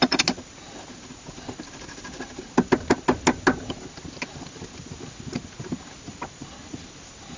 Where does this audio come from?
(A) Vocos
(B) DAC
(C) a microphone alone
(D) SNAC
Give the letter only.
C